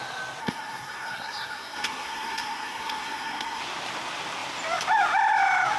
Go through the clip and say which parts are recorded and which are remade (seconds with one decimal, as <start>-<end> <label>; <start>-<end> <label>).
0.0-0.4 recorded; 0.4-3.6 remade; 3.6-5.8 recorded

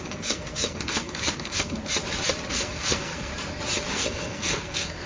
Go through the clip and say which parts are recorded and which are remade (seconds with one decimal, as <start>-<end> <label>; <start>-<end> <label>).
0.0-1.8 remade; 1.8-2.5 recorded; 2.5-3.3 remade; 3.3-3.9 recorded; 3.9-5.1 remade

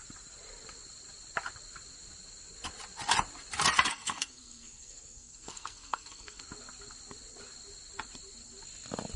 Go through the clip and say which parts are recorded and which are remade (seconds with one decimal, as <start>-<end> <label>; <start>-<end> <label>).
0.0-3.9 recorded; 3.9-6.4 remade; 6.4-9.2 recorded

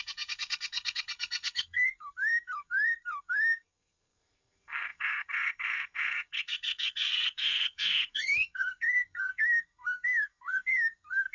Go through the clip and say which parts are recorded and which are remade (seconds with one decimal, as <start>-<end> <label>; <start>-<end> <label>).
0.0-11.3 remade

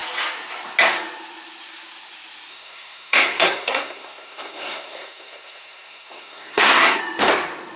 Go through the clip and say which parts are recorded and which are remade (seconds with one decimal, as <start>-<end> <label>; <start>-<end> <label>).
0.0-2.5 recorded; 2.5-7.0 remade; 7.0-7.8 recorded

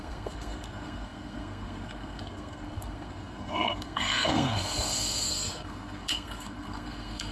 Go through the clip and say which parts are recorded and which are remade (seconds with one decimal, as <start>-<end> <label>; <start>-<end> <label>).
0.0-7.3 remade